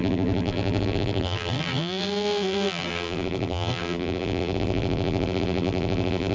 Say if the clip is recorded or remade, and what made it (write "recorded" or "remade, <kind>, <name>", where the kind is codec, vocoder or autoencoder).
remade, vocoder, BigVGAN v2